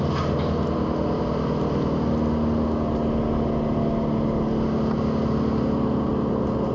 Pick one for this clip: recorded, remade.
recorded